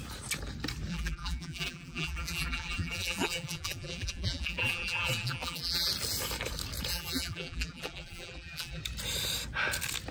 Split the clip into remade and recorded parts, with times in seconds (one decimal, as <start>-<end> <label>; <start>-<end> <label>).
0.0-0.9 recorded; 0.9-5.9 remade; 5.9-6.9 recorded; 6.9-8.8 remade; 8.8-10.1 recorded